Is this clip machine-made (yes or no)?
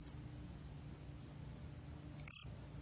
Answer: no